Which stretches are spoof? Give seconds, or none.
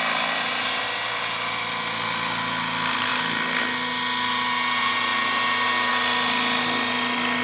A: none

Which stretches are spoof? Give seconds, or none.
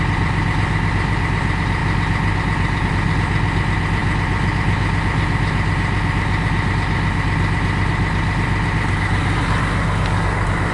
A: none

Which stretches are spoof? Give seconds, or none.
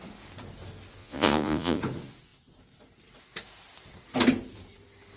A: 1.0-1.8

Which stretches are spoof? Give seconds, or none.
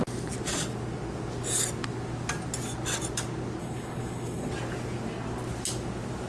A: 3.6-4.5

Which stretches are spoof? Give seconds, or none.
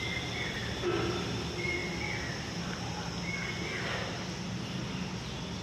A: none